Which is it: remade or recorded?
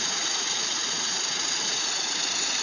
remade